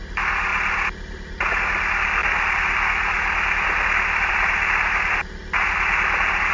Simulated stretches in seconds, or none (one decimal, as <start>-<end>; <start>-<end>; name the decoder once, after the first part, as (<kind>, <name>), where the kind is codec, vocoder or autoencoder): none